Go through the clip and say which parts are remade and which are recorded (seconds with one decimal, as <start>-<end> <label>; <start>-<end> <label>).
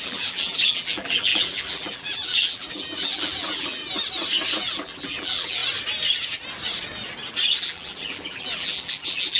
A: 0.0-3.8 remade; 3.8-4.5 recorded; 4.5-5.6 remade; 5.6-7.6 recorded; 7.6-9.4 remade